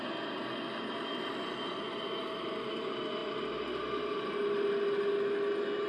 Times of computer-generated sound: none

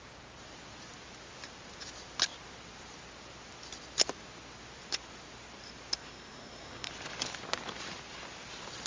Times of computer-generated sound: 6.0-6.9 (codec, SNAC)

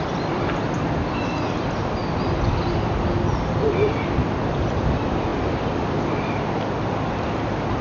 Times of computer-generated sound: none